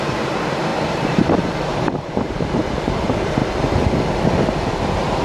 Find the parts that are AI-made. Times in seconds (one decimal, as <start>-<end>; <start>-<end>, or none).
0.0-3.4; 4.5-5.2

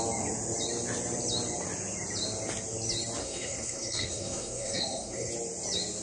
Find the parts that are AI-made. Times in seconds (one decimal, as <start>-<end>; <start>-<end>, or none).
3.2-5.3

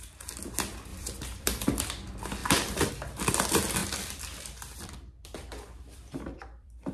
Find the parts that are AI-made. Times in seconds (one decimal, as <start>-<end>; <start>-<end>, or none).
0.9-1.8; 2.4-2.9; 3.8-6.9

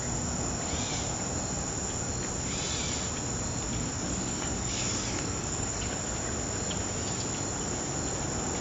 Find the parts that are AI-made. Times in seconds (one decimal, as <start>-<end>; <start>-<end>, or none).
3.7-6.0

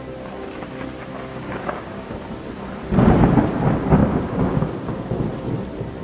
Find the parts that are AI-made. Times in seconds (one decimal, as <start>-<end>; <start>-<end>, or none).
1.3-2.1; 4.0-5.1

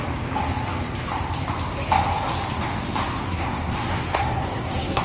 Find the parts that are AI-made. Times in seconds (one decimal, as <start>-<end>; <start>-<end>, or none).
3.3-5.0